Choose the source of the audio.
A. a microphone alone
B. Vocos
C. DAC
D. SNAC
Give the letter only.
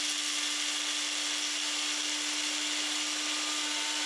A